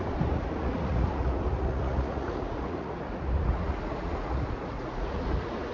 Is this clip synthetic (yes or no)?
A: yes